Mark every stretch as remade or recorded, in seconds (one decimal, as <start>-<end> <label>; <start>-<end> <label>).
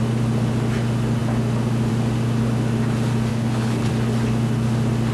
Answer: 0.0-3.3 recorded; 3.3-3.9 remade; 3.9-5.1 recorded